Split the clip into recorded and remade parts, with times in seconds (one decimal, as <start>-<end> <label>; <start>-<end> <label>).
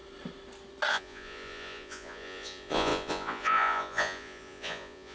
0.0-0.9 recorded; 0.9-5.1 remade